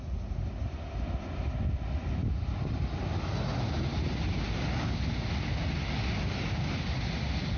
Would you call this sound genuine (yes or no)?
yes